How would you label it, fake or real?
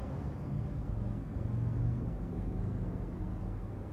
fake